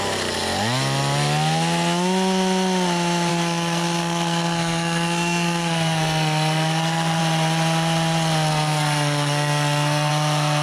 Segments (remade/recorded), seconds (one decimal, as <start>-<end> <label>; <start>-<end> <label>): 0.0-3.3 recorded; 3.3-7.2 remade; 7.2-8.5 recorded; 8.5-10.1 remade; 10.1-10.6 recorded